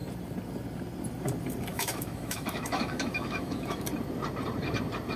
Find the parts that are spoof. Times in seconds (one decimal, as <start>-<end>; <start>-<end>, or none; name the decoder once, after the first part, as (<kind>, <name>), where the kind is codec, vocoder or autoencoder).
1.7-3.8 (autoencoder, DAC-VAE)